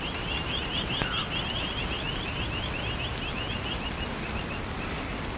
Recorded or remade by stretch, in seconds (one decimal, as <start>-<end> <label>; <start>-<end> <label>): 0.0-5.4 recorded